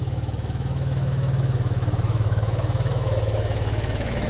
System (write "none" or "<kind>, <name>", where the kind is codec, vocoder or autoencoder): autoencoder, DAC-VAE